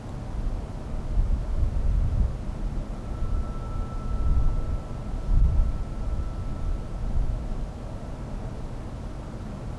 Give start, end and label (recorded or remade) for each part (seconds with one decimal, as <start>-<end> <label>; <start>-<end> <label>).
0.0-9.8 recorded